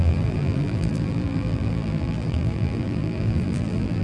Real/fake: fake